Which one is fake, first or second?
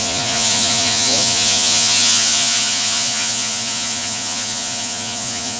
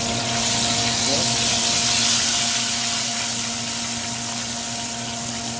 first